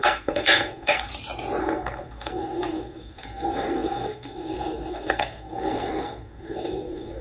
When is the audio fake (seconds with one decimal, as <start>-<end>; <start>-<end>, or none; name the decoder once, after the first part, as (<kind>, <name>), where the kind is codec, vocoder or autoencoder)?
0.0-1.1 (codec, SNAC); 1.6-7.2